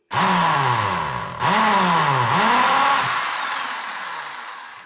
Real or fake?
real